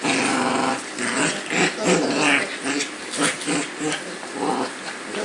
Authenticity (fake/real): real